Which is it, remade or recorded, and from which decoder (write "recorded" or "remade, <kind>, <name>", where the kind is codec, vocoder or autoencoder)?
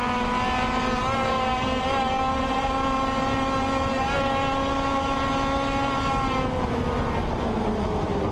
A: recorded